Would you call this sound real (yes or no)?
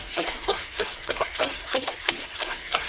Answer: no